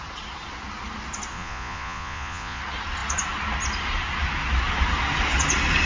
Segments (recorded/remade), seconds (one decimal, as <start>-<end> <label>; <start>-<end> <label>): 0.0-1.3 recorded; 1.3-2.6 remade; 2.6-5.9 recorded